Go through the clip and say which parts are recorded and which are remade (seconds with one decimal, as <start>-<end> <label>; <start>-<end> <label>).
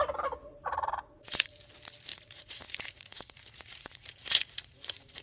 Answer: 0.0-0.4 recorded; 0.4-1.5 remade; 1.5-2.1 recorded; 2.1-5.2 remade